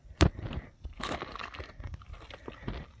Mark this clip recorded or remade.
recorded